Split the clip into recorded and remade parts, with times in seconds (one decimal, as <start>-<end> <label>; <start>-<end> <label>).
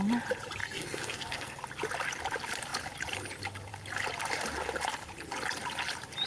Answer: 0.0-0.6 recorded; 0.6-1.6 remade; 1.6-6.3 recorded